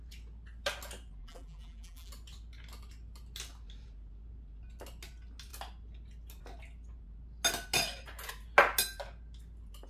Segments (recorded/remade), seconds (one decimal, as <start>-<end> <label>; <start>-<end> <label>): 0.0-1.2 recorded; 1.2-2.1 remade; 2.1-9.9 recorded